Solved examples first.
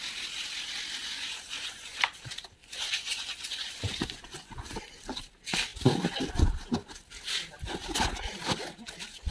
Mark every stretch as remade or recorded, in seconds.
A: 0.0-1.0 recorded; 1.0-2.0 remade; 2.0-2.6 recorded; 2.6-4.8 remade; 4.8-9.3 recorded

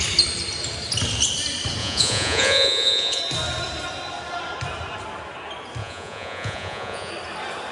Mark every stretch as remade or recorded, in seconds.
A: 0.0-1.8 recorded; 1.8-3.2 remade; 3.2-5.8 recorded; 5.8-7.1 remade; 7.1-7.7 recorded

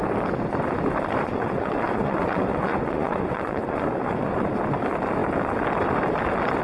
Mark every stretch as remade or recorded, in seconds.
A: 0.0-1.2 recorded; 1.2-4.5 remade; 4.5-6.6 recorded

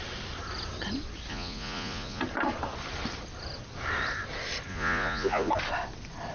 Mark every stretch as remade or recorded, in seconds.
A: 0.0-1.3 recorded; 1.3-2.2 remade; 2.2-4.7 recorded; 4.7-5.5 remade; 5.5-6.3 recorded

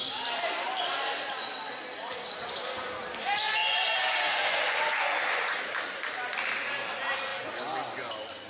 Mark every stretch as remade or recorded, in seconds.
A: 0.0-3.6 recorded; 3.6-5.6 remade; 5.6-8.5 recorded

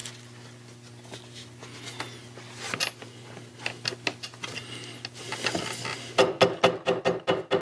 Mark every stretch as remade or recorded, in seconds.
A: 0.0-7.6 recorded

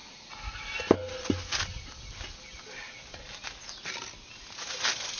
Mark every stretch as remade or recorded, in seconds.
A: 0.0-0.8 remade; 0.8-5.2 recorded